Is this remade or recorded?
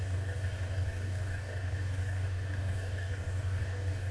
remade